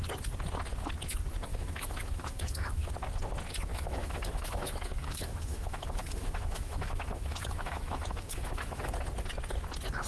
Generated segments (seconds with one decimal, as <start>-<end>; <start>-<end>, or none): 1.5-2.9; 3.7-8.9